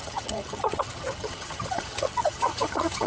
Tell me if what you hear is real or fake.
fake